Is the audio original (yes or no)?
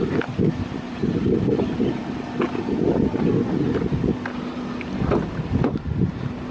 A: yes